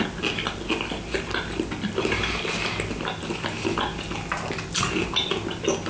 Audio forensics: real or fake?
real